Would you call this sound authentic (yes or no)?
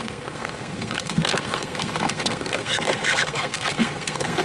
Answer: no